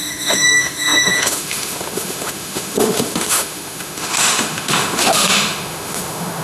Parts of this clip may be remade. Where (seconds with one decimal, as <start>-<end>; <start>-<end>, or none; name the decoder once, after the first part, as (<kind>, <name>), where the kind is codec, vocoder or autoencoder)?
0.0-6.4 (autoencoder, DAC-VAE)